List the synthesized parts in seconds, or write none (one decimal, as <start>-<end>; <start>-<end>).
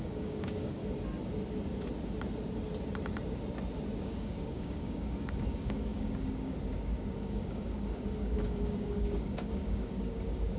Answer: 0.0-0.8; 4.0-10.6